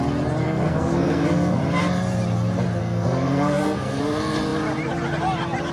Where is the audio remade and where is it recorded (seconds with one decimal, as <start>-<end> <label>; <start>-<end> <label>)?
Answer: 0.0-0.4 recorded; 0.4-1.6 remade; 1.6-2.8 recorded; 2.8-4.0 remade; 4.0-5.7 recorded